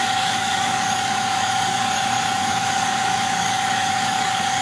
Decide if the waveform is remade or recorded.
remade